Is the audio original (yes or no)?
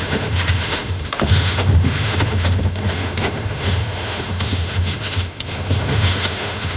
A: no